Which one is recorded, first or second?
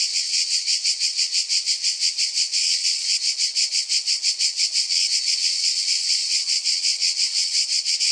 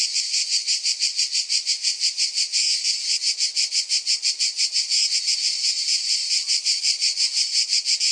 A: second